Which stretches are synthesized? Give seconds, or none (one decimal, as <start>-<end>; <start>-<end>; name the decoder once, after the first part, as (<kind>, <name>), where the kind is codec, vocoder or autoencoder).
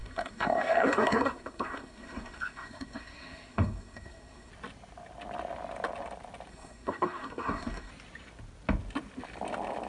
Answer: 0.0-4.5 (codec, SNAC); 6.5-7.9